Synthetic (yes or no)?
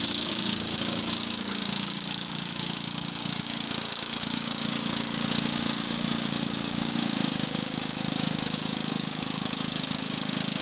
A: yes